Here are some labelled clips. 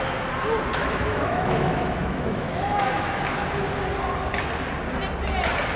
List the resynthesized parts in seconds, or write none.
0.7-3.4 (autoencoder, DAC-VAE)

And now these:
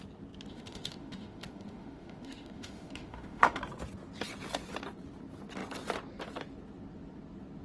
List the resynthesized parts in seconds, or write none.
0.5-3.6 (autoencoder, DAC-VAE)

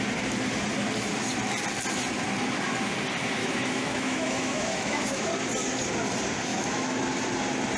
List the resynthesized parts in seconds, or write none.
3.4-5.3 (autoencoder, DAC-VAE); 6.5-7.0

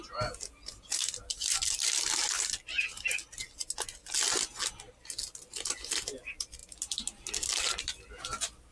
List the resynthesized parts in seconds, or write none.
none

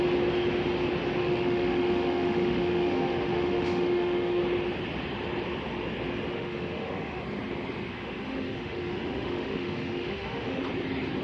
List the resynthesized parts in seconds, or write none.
1.2-4.4 (autoencoder, DAC-VAE); 6.3-7.2; 7.9-10.6

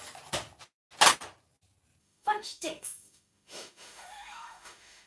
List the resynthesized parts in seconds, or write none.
2.0-5.1 (autoencoder, DAC-VAE)

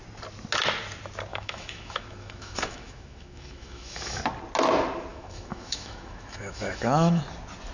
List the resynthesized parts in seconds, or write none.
1.3-4.2 (autoencoder, DAC-VAE); 5.1-7.2